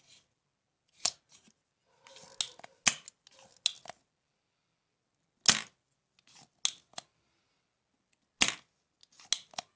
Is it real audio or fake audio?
real